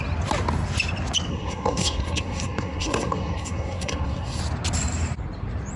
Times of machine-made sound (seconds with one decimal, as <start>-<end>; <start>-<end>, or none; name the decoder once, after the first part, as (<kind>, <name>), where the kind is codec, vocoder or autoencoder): 1.3-4.4 (codec, SNAC)

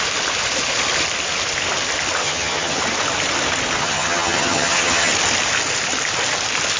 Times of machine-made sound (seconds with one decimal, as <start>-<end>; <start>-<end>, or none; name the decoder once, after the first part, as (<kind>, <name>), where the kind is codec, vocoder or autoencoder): 2.2-2.8 (vocoder, HiFi-GAN); 3.8-5.1